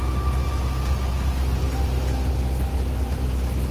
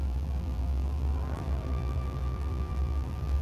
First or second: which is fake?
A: second